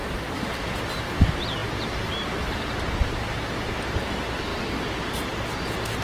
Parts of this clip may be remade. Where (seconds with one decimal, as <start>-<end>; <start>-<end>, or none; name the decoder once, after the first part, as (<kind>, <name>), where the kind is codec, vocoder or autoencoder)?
none

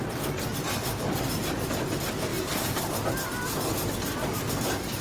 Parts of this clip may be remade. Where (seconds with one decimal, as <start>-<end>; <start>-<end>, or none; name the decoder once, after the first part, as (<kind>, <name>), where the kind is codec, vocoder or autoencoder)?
0.6-1.2 (vocoder, BigVGAN v2); 2.3-3.1

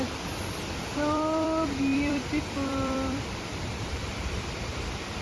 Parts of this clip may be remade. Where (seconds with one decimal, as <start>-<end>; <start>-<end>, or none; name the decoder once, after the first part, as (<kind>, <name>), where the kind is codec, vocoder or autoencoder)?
0.0-5.2 (vocoder, BigVGAN v2)

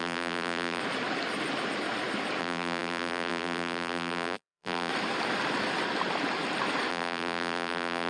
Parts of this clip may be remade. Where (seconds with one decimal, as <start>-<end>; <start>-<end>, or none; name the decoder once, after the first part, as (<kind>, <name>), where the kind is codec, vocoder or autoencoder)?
0.0-0.8 (vocoder, BigVGAN v2); 2.4-4.9; 6.9-8.1